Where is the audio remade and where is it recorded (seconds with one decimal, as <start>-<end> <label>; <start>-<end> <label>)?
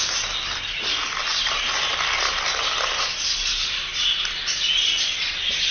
0.0-5.7 recorded